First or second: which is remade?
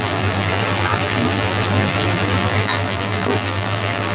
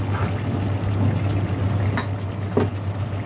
first